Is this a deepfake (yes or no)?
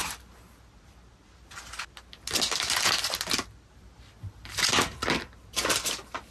no